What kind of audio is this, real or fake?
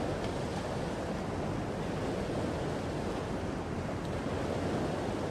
real